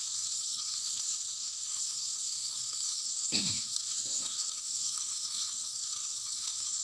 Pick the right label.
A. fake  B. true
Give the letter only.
A